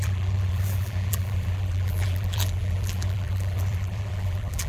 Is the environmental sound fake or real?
fake